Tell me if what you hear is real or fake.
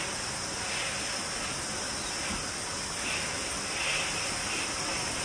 real